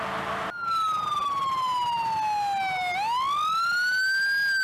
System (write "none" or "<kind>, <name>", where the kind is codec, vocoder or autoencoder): none